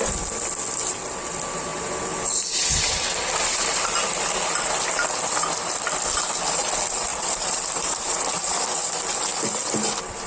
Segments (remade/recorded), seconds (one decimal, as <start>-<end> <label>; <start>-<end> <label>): 0.0-7.1 recorded; 7.1-8.6 remade; 8.6-10.3 recorded